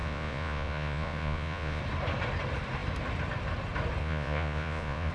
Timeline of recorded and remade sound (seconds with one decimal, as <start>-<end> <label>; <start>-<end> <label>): 0.0-1.8 remade; 1.8-4.0 recorded; 4.0-5.1 remade